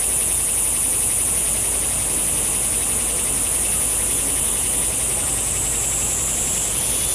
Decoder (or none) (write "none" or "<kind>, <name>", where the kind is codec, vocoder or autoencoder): none